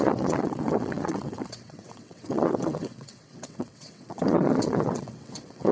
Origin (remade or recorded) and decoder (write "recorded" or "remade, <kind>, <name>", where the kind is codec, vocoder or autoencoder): remade, vocoder, WaveNeXt